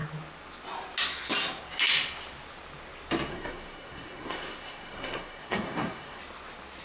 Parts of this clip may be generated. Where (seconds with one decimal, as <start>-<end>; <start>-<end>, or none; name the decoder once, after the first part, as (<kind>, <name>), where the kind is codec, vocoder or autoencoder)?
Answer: 3.3-6.2 (codec, SNAC)